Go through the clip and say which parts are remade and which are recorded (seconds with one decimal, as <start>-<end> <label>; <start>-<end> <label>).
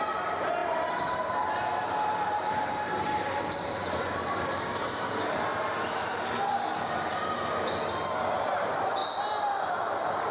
0.0-5.5 remade; 5.5-8.3 recorded; 8.3-9.0 remade; 9.0-9.7 recorded; 9.7-10.3 remade